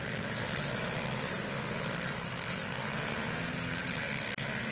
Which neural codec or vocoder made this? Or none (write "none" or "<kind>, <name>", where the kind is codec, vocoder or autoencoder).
none